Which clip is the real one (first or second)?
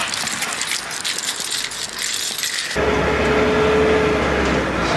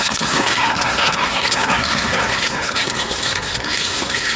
first